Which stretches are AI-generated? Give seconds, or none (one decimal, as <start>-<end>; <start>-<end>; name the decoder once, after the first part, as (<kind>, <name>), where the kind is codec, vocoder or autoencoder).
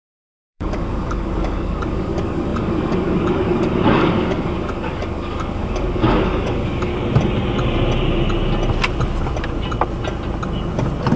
0.0-6.9 (codec, DAC)